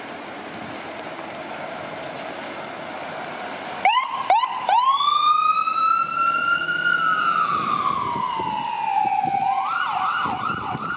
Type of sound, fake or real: real